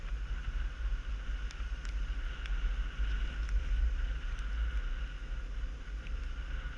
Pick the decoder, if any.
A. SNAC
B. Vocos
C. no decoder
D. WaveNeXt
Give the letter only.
C